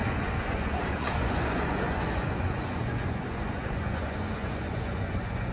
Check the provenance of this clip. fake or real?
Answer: fake